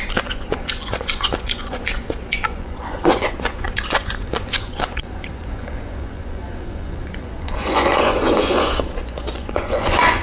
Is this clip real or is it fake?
fake